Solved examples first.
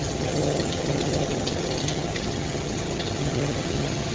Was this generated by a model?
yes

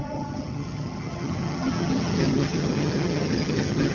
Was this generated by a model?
yes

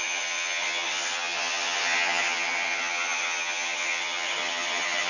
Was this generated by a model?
yes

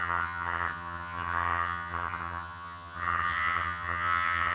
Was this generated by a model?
yes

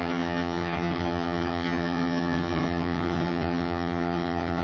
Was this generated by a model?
yes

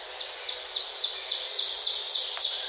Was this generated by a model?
no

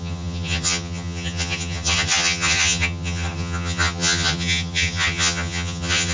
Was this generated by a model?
yes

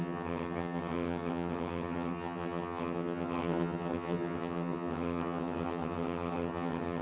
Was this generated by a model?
yes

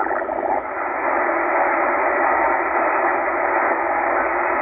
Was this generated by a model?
no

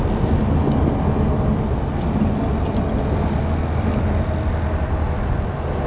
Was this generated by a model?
no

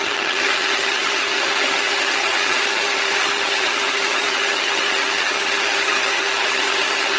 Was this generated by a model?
yes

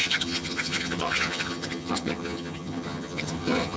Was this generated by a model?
yes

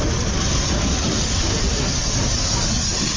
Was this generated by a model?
no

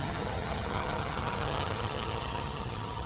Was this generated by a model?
yes